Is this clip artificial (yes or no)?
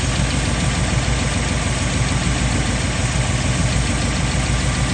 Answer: no